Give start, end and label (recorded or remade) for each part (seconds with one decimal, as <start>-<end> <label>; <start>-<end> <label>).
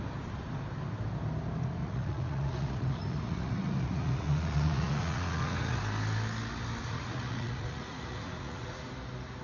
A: 0.0-1.8 recorded; 1.8-5.8 remade; 5.8-6.8 recorded; 6.8-8.9 remade; 8.9-9.4 recorded